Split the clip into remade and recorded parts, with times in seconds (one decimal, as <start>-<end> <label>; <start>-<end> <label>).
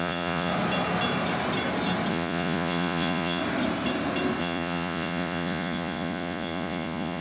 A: 0.0-0.5 remade; 0.5-2.1 recorded; 2.1-3.4 remade; 3.4-4.4 recorded; 4.4-7.2 remade